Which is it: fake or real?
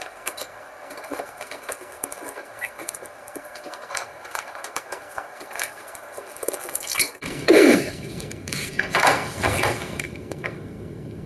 fake